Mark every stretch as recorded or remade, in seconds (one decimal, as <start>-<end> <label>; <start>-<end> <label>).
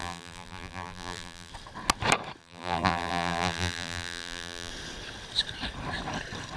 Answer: 0.0-1.5 remade; 1.5-2.4 recorded; 2.4-4.7 remade; 4.7-6.6 recorded